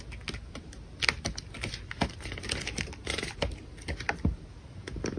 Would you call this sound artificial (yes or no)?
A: no